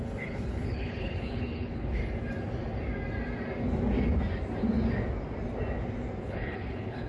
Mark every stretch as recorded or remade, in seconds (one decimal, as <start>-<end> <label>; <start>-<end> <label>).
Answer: 0.0-2.0 remade; 2.0-6.2 recorded; 6.2-7.1 remade